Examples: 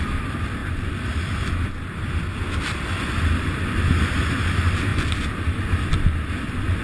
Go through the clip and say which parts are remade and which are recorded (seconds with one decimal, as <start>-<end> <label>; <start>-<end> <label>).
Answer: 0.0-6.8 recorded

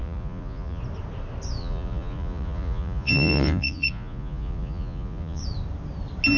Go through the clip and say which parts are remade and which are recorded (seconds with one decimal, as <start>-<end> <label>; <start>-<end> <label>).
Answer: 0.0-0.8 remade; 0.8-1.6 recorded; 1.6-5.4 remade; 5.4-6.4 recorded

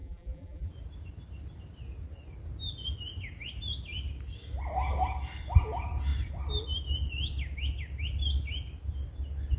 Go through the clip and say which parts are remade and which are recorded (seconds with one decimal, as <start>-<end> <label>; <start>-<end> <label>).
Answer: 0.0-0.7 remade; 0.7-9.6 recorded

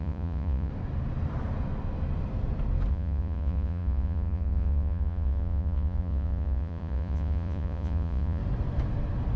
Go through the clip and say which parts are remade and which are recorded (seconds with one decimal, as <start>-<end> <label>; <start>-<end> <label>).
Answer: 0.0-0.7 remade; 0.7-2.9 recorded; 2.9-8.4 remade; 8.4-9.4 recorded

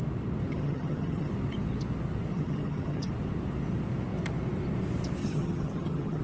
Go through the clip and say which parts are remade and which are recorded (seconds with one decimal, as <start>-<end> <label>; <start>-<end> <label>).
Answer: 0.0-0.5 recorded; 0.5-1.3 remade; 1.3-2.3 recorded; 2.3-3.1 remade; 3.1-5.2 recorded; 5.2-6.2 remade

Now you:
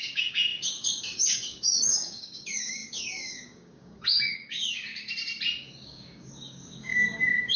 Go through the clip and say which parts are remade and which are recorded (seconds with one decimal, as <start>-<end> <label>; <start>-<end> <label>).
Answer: 0.0-4.9 remade; 4.9-5.6 recorded; 5.6-7.6 remade

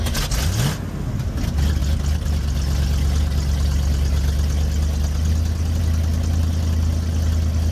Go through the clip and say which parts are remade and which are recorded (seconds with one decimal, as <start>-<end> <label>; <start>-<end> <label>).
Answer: 0.0-7.7 recorded